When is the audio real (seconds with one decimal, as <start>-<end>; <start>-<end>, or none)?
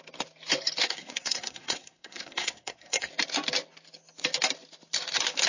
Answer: 0.0-0.8; 3.1-5.5